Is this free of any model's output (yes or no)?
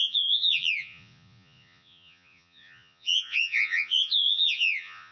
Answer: no